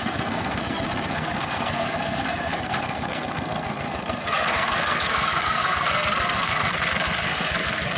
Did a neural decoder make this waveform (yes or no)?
yes